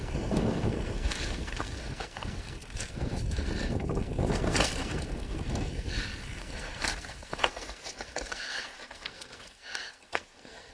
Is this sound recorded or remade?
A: remade